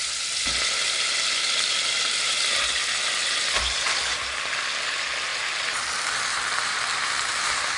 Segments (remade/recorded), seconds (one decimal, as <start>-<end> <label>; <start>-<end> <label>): 0.0-5.3 recorded; 5.3-5.8 remade; 5.8-6.9 recorded; 6.9-7.8 remade